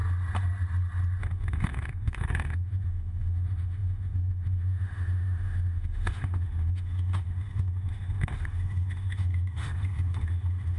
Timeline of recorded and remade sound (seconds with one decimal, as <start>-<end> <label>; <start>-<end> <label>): 0.0-1.2 recorded; 1.2-10.8 remade